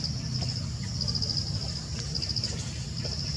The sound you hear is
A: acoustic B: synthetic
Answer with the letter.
A